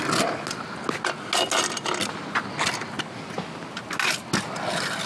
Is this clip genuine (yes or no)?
yes